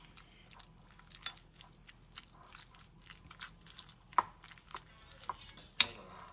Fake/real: real